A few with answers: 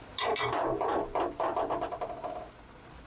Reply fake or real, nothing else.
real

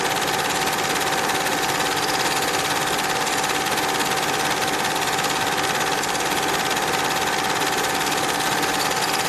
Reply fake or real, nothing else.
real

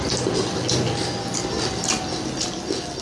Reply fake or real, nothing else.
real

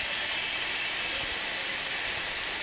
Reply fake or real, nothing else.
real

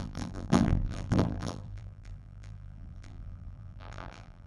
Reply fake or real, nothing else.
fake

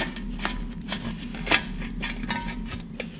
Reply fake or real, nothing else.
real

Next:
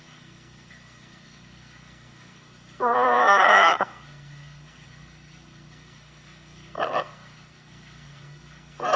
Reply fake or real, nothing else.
fake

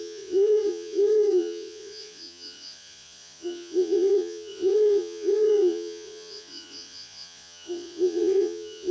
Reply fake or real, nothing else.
fake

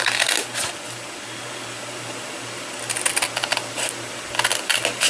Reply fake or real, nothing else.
real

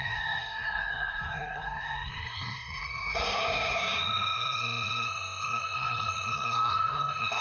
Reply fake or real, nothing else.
fake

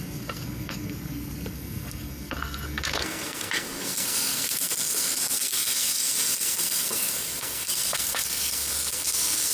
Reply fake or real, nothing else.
fake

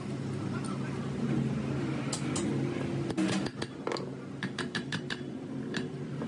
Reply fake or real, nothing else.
real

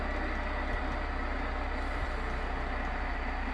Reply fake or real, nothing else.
real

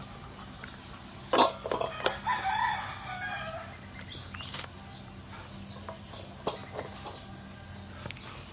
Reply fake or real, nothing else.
real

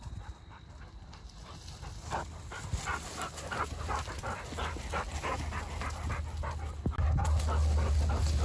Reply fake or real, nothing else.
real